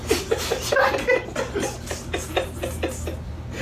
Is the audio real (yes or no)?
yes